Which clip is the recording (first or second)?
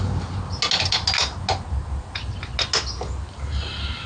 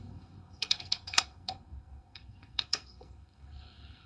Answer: first